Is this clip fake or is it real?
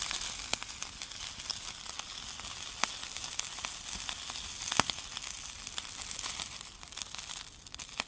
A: real